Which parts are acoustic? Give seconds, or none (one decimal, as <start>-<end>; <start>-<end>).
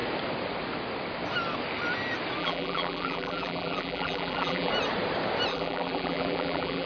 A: 0.0-2.4; 4.7-5.5